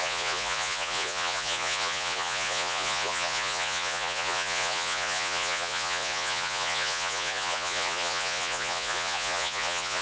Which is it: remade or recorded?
remade